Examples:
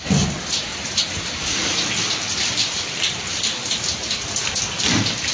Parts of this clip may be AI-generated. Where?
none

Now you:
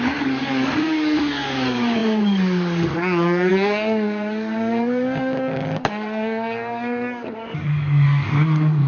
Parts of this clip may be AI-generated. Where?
0.0-8.9 (codec, DAC)